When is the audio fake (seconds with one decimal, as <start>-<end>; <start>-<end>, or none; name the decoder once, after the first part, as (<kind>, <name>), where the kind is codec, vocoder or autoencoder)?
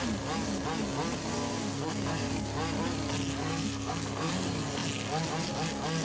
1.5-2.3 (codec, SNAC); 3.4-4.3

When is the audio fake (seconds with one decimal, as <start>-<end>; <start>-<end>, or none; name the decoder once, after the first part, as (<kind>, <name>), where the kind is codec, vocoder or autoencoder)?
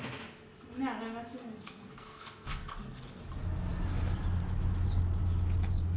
1.4-3.2 (codec, SNAC)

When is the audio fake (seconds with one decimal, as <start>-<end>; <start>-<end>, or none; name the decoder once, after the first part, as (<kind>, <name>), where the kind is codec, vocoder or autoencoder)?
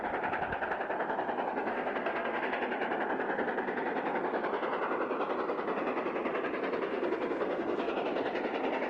1.7-2.4 (codec, SNAC); 6.9-7.9